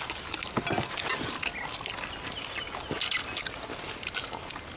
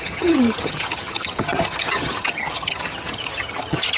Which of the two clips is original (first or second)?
first